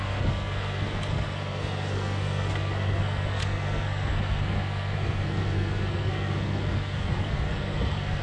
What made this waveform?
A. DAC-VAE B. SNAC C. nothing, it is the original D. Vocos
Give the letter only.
B